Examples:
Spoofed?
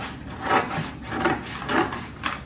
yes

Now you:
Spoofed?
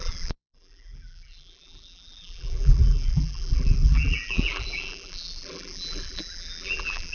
yes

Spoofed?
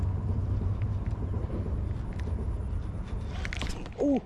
no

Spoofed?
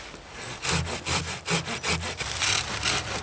no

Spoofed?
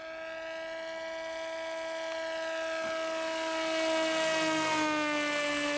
no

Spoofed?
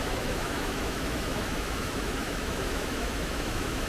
yes